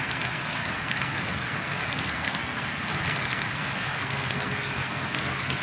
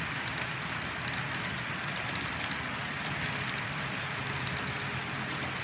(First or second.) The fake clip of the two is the first